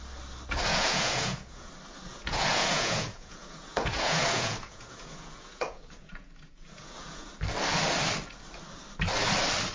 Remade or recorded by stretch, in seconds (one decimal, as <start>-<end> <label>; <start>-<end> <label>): 0.0-0.7 recorded; 0.7-1.7 remade; 1.7-2.1 recorded; 2.1-7.3 remade; 7.3-9.7 recorded